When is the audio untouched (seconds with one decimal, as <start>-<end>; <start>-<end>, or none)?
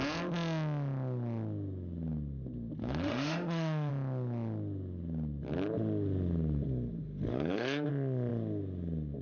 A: 0.0-2.8; 3.9-7.3; 7.9-9.2